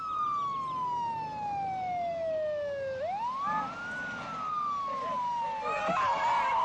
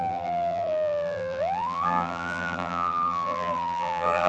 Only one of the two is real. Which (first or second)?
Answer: first